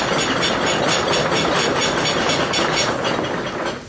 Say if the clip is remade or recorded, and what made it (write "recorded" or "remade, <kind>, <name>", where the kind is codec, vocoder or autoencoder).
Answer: recorded